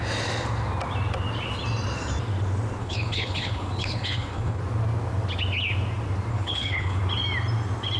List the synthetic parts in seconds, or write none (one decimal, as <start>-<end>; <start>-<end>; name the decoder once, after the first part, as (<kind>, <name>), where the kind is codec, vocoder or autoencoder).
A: 2.8-4.6 (codec, HILCodec); 6.3-7.0